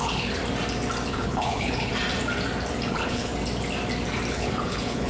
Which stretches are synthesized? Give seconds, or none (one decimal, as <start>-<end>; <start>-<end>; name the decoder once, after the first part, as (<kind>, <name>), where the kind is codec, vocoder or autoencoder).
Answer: 0.0-0.4 (codec, HILCodec); 1.1-1.9; 2.9-3.3; 4.3-5.1

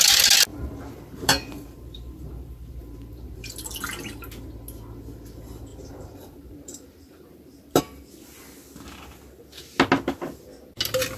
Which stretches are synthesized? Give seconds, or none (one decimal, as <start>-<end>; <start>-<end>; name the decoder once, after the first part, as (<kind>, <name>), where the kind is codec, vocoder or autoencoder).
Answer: 0.5-3.4 (vocoder, BigVGAN v2); 5.7-7.8

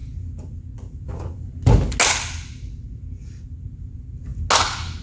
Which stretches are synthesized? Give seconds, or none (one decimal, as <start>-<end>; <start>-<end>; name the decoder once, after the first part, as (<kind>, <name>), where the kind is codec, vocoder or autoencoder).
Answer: none

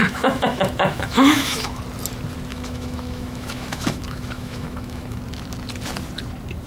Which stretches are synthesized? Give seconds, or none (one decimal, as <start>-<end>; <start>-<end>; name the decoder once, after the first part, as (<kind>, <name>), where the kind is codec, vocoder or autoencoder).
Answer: 0.0-1.8 (autoencoder, DAC-VAE); 2.5-5.2

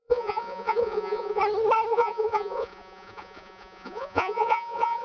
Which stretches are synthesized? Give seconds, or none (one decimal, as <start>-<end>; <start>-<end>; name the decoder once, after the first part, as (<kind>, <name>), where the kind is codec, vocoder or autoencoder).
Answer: 0.0-1.4 (vocoder, Vocos); 1.9-5.0